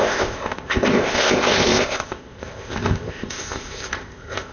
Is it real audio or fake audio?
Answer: fake